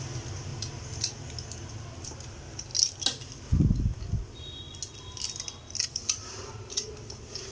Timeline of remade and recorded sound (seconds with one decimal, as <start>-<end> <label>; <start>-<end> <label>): 0.0-7.5 recorded